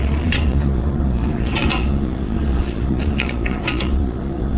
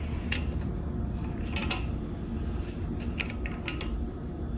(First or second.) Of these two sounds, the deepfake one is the first